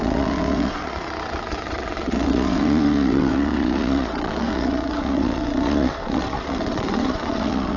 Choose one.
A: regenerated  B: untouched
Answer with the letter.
A